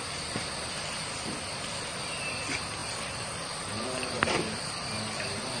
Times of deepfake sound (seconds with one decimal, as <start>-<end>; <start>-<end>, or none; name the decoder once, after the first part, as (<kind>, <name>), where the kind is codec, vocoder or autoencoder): none